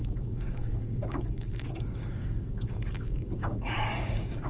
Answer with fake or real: fake